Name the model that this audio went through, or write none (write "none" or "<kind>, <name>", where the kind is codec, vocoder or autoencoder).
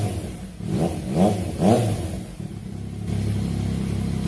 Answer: none